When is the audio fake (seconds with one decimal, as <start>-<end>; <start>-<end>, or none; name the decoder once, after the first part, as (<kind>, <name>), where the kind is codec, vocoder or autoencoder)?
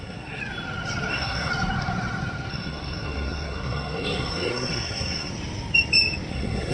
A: 0.0-0.4 (codec, SNAC); 1.1-1.5; 2.5-5.3; 6.3-6.7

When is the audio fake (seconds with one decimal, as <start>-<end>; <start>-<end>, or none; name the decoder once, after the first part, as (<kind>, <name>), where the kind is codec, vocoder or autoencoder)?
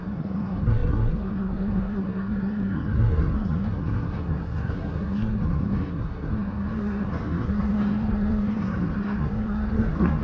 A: 0.0-10.2 (codec, SNAC)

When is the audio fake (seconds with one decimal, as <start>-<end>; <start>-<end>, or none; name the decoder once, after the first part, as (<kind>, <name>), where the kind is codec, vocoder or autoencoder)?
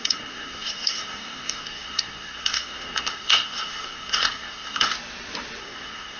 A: 0.0-4.9 (codec, SNAC); 5.6-6.2